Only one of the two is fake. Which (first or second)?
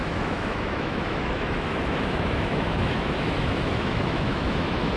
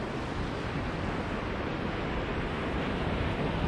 first